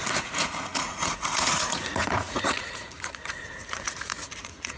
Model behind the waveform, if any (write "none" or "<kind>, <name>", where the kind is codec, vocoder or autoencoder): vocoder, Vocos